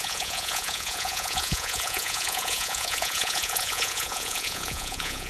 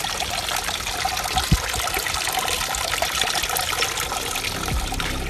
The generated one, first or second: first